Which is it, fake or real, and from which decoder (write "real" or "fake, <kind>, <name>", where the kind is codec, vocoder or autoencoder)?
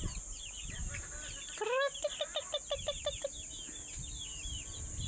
real